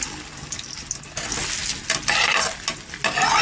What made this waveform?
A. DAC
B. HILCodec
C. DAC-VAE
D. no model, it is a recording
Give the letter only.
D